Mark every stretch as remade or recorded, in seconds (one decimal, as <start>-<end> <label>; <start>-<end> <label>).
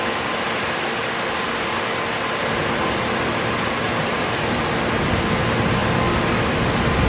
0.0-4.0 recorded; 4.0-4.6 remade; 4.6-7.1 recorded